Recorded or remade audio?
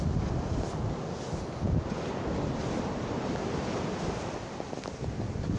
recorded